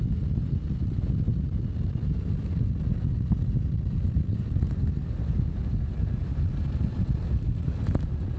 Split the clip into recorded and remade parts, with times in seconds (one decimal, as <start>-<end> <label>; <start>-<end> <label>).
0.0-8.4 recorded